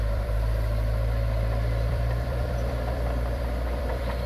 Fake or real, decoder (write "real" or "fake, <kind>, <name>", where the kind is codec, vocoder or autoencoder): fake, vocoder, BigVGAN v2